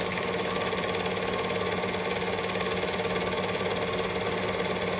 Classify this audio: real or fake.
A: real